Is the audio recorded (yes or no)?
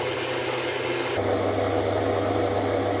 yes